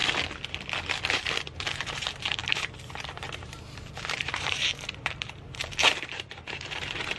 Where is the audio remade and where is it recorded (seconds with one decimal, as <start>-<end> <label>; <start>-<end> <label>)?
0.0-1.1 recorded; 1.1-7.2 remade